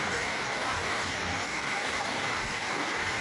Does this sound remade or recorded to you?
remade